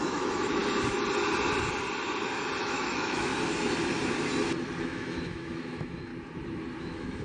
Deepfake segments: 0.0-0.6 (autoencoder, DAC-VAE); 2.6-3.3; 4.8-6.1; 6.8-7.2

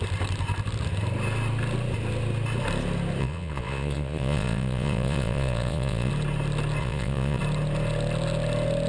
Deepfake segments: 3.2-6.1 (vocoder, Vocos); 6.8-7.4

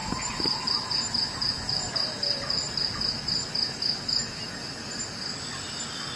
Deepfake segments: 0.0-3.0 (vocoder, BigVGAN v2)

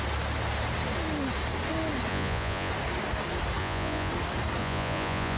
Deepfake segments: 2.1-2.7 (vocoder, Vocos); 3.6-4.1; 4.6-5.4

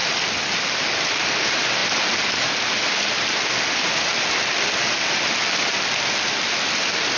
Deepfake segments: none

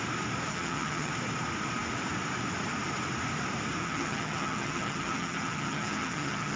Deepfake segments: 0.5-1.1 (vocoder, HiFi-GAN); 3.8-6.6

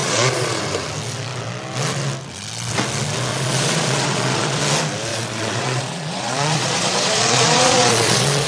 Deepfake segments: 0.0-0.6 (vocoder, Vocos); 3.3-4.6; 5.1-8.5